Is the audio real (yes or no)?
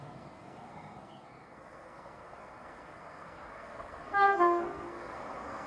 no